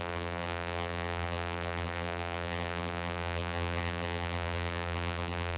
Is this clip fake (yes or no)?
yes